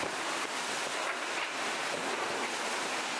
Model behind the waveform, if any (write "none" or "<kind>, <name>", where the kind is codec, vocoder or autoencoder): none